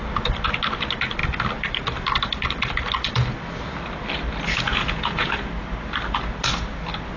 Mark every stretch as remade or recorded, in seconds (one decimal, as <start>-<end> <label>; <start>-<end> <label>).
0.0-4.7 recorded; 4.7-5.5 remade; 5.5-7.2 recorded